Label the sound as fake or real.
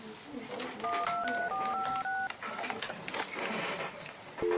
real